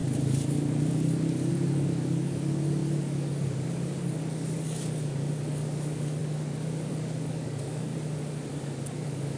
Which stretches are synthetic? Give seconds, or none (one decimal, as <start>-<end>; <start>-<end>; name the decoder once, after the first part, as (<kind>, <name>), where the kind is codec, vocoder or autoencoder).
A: 0.0-7.9 (codec, DAC); 8.5-9.4